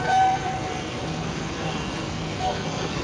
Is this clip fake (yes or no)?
yes